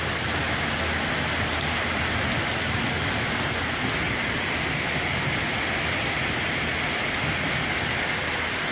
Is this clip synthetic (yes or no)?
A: no